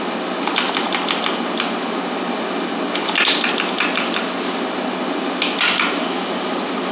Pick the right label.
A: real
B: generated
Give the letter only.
A